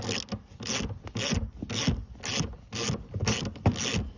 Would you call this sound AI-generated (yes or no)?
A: no